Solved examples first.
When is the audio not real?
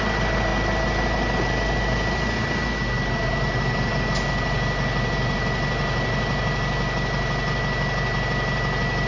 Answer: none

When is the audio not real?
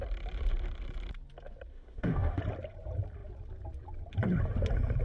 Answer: 1.7-2.4 (autoencoder, DAC-VAE)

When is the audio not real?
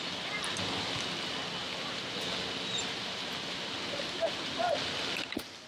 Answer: none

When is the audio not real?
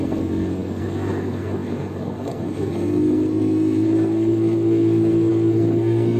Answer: 0.0-6.2 (codec, SNAC)